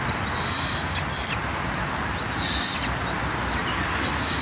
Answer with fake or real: real